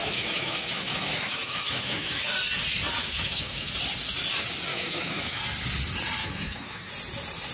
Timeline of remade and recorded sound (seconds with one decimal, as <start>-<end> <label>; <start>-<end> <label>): 0.0-2.3 remade; 2.3-3.0 recorded; 3.0-3.7 remade; 3.7-4.7 recorded; 4.7-5.4 remade; 5.4-6.2 recorded; 6.2-6.9 remade; 6.9-7.5 recorded

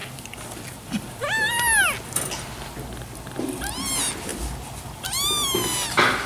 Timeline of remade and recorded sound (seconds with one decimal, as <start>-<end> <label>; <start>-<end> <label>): 0.0-6.3 recorded

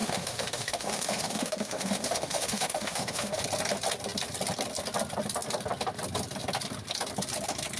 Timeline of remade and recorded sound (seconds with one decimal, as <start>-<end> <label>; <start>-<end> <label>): 0.0-3.4 remade; 3.4-7.8 recorded

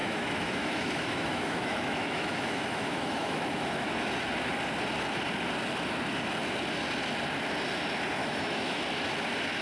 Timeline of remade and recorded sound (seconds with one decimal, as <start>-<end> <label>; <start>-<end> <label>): 0.0-4.0 remade; 4.0-8.2 recorded; 8.2-8.8 remade; 8.8-9.6 recorded

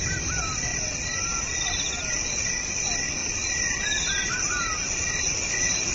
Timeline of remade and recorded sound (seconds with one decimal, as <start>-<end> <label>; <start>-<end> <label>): 0.0-5.9 recorded

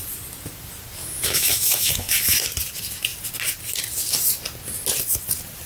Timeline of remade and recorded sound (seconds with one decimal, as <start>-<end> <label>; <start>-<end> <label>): 0.0-1.0 recorded; 1.0-2.4 remade; 2.4-5.7 recorded